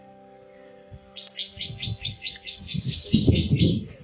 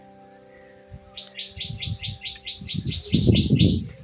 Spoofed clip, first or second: first